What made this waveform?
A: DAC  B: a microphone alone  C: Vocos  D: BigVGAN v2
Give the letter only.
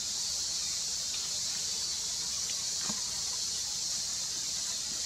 B